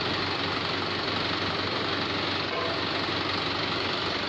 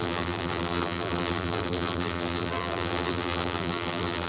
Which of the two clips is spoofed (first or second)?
second